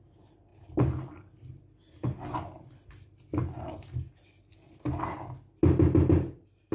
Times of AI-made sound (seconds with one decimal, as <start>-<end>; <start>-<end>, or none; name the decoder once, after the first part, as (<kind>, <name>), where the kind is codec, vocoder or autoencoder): none